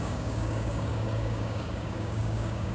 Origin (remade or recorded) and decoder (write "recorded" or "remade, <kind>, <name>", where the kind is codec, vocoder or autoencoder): remade, codec, DAC